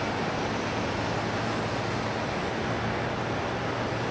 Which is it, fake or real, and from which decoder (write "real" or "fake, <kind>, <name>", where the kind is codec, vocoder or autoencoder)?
real